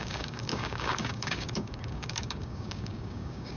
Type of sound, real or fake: fake